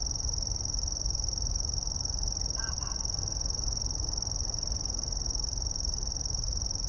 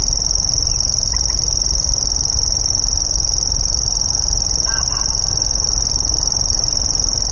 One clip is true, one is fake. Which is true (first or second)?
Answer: second